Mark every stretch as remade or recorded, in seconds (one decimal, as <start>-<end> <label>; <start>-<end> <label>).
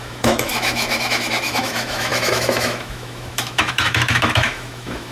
0.0-5.1 remade